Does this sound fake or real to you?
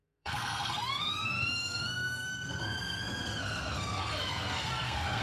fake